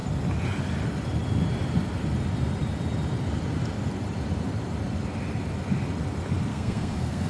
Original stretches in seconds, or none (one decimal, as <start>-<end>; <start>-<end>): 0.0-6.5